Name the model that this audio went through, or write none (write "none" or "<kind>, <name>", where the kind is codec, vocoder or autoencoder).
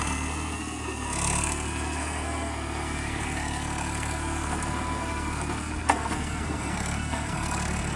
codec, SNAC